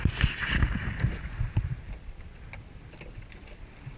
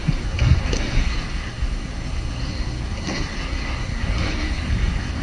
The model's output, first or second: second